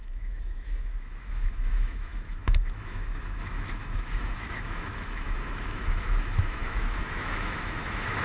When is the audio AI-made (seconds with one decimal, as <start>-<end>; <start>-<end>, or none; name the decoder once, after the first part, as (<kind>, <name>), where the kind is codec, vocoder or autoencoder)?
0.0-8.2 (autoencoder, DAC-VAE)